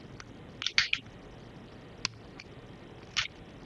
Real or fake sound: real